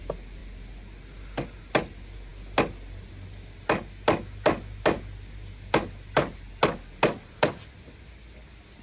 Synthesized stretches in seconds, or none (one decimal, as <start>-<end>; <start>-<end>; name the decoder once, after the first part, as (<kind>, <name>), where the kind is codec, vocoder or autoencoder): none

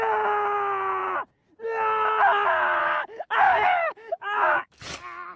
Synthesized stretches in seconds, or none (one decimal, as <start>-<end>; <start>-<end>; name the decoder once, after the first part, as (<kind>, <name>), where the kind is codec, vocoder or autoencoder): 2.8-4.8 (codec, DAC)